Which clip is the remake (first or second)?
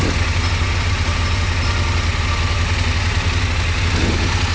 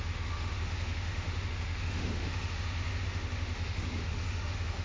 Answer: second